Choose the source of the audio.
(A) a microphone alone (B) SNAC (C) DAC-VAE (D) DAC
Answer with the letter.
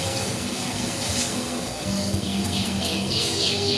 B